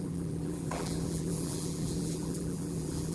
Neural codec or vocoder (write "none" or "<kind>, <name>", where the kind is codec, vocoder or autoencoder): vocoder, BigVGAN v2